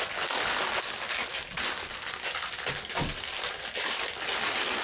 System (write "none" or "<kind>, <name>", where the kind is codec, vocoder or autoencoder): none